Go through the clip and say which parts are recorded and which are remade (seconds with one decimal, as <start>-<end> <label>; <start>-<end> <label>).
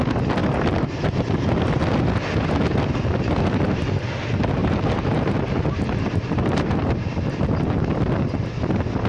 0.0-0.4 recorded; 0.4-1.0 remade; 1.0-4.6 recorded; 4.6-7.7 remade; 7.7-9.1 recorded